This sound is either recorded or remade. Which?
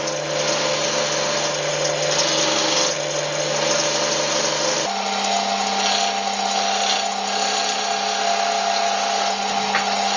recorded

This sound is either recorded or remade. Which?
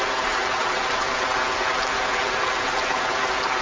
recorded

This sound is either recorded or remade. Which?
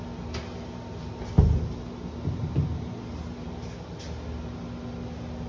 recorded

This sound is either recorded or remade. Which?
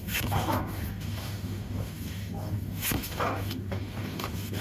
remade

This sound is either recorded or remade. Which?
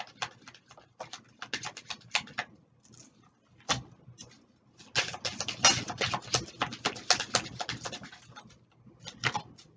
recorded